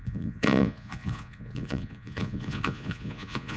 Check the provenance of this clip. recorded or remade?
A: remade